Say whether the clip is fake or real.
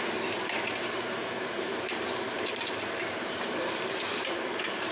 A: fake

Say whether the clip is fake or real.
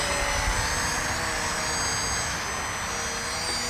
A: real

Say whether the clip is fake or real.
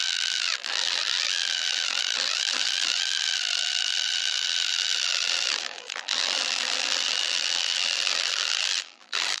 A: fake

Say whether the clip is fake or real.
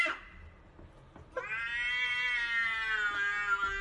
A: real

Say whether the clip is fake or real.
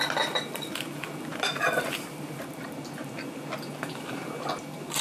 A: fake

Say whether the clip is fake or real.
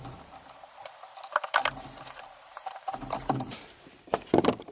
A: fake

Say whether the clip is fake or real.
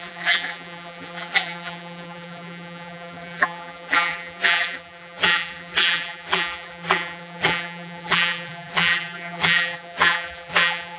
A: fake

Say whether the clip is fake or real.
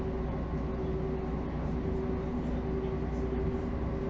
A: real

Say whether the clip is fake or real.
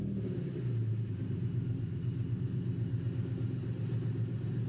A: fake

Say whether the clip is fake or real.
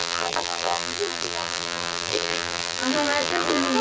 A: fake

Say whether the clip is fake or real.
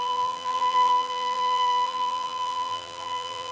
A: fake